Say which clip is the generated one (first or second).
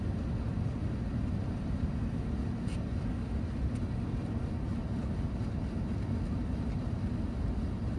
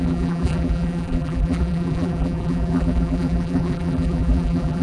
second